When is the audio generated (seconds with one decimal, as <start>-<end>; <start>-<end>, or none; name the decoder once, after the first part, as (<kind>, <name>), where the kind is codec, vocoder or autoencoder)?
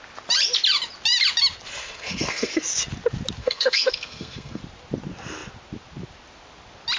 1.8-2.5 (codec, SNAC); 3.4-4.6